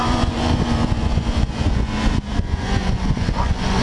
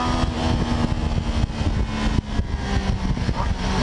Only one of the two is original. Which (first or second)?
second